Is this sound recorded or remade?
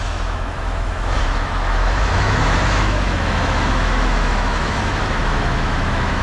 remade